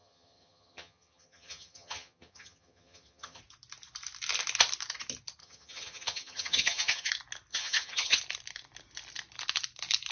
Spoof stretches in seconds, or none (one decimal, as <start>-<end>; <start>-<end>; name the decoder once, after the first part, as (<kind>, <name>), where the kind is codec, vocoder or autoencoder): 0.0-3.4 (vocoder, HiFi-GAN); 5.4-7.1; 7.5-8.2